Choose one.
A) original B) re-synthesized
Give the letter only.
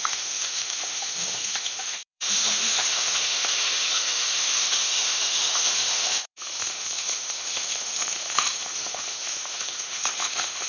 B